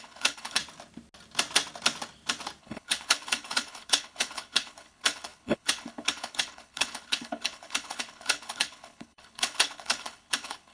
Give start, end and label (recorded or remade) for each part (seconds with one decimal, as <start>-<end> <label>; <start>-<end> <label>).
0.0-0.6 remade; 0.6-2.6 recorded; 2.6-10.7 remade

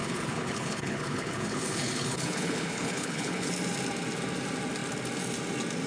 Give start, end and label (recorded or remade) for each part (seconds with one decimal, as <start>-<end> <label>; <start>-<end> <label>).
0.0-3.5 remade; 3.5-5.9 recorded

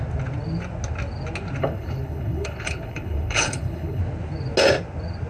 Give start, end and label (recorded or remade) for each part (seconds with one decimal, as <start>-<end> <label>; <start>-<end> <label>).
0.0-1.6 recorded; 1.6-4.0 remade; 4.0-5.3 recorded

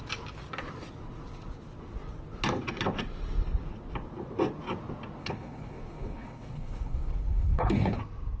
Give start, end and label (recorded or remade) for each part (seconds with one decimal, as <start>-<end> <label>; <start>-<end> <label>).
0.0-5.2 recorded; 5.2-8.0 remade; 8.0-8.4 recorded

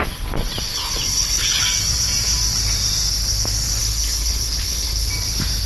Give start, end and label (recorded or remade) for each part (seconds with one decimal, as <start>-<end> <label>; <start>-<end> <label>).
0.0-0.7 recorded; 0.7-1.6 remade; 1.6-3.8 recorded; 3.8-5.1 remade; 5.1-5.7 recorded

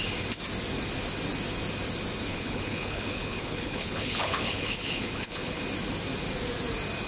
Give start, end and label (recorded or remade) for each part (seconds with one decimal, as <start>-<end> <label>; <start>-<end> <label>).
0.0-2.3 recorded; 2.3-5.6 remade; 5.6-7.1 recorded

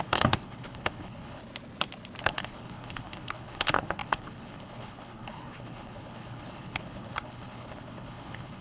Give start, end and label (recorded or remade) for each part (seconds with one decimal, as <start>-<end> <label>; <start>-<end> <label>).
0.0-1.4 remade; 1.4-2.2 recorded; 2.2-8.6 remade